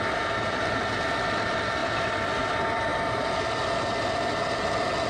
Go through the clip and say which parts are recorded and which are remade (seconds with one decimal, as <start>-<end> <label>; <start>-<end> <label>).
0.0-5.1 recorded